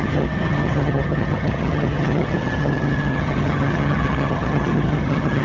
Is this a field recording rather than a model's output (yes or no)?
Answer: no